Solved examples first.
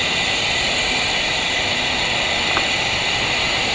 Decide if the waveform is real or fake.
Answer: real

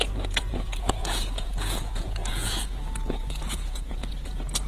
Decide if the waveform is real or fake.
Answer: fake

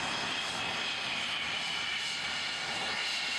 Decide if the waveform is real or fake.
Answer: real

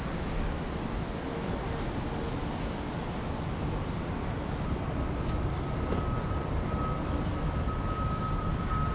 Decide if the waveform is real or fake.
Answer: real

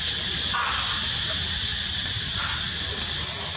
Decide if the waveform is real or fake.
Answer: real